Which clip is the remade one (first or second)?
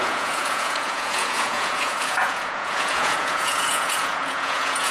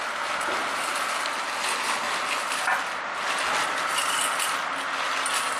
first